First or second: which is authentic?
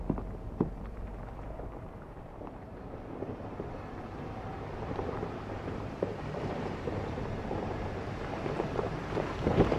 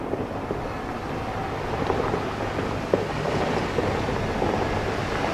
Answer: second